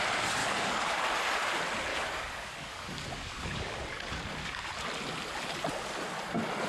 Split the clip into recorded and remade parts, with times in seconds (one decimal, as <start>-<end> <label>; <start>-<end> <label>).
0.0-0.4 recorded; 0.4-1.0 remade; 1.0-1.9 recorded; 1.9-4.7 remade; 4.7-6.7 recorded